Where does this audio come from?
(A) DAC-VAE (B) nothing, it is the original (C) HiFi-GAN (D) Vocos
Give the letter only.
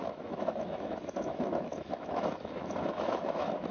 A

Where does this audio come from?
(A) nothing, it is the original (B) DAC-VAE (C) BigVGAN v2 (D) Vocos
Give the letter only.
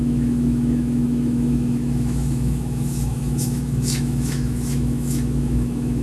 B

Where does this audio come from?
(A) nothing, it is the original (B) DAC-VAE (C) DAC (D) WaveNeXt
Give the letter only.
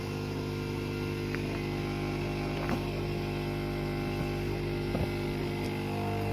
A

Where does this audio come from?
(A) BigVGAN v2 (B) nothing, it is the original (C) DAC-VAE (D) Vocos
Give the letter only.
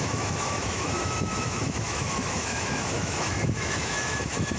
C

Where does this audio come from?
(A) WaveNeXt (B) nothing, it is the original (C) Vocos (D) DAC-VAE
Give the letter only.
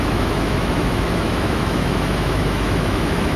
D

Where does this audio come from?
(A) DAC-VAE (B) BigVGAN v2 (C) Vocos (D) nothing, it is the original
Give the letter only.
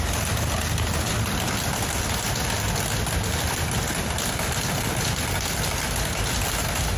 D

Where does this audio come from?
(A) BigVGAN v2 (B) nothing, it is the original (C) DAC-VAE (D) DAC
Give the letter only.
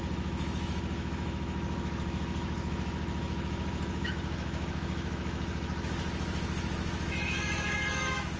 C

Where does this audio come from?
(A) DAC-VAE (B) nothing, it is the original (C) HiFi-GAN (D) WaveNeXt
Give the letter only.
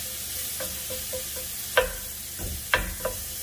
B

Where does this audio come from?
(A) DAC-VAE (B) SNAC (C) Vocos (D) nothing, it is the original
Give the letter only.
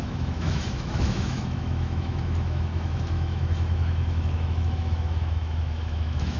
A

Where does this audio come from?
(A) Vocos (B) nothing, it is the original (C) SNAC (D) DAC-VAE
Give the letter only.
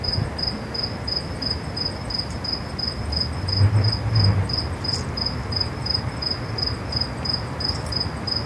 B